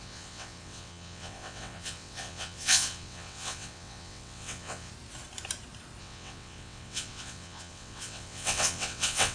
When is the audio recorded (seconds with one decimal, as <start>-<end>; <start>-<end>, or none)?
4.9-6.0

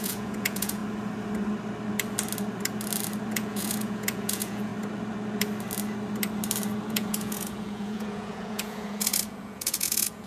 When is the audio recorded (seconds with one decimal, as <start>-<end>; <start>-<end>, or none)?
0.8-3.3; 4.7-6.9